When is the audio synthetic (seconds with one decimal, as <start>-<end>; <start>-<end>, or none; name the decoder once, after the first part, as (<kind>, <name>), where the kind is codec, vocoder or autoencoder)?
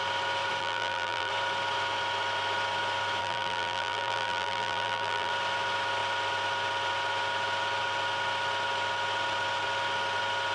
0.6-1.3 (vocoder, BigVGAN v2); 3.2-5.3